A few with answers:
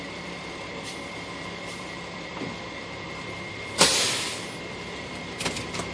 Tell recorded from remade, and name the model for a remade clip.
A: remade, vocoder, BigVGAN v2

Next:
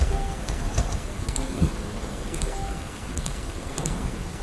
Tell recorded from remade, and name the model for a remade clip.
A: remade, codec, SNAC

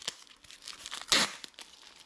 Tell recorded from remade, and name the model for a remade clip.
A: recorded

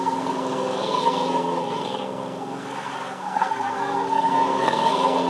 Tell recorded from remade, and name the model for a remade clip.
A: remade, codec, SNAC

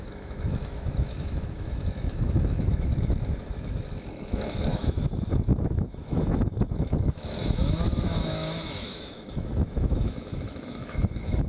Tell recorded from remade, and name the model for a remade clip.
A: remade, autoencoder, DAC-VAE